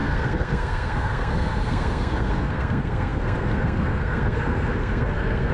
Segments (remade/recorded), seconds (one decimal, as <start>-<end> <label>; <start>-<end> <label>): 0.0-5.5 remade